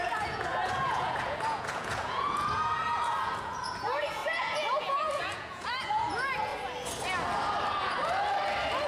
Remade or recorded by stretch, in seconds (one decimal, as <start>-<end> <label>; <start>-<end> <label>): 0.0-6.5 remade; 6.5-8.9 recorded